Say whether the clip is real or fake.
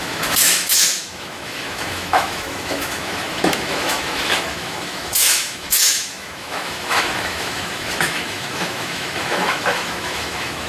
fake